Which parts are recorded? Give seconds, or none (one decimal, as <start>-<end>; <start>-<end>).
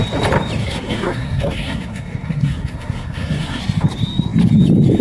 0.0-0.6; 3.6-5.0